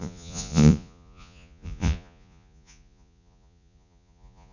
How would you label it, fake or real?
fake